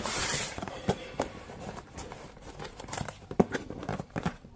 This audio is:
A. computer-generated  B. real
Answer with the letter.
A